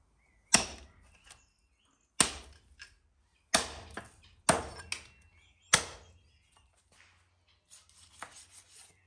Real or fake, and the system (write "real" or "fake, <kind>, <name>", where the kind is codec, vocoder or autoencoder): real